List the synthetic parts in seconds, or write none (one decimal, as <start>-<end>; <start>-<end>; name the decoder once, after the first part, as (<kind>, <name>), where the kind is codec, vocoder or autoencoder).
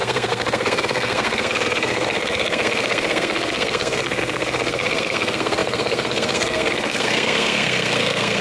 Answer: 0.0-8.4 (codec, SNAC)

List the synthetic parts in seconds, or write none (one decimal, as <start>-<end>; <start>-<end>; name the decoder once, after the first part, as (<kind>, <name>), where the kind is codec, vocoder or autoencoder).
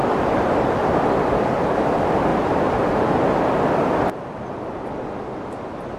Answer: 0.0-1.8 (vocoder, BigVGAN v2); 2.3-3.0